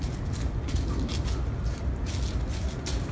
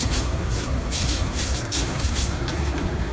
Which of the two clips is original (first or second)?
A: first